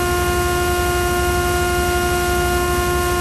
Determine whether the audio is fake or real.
real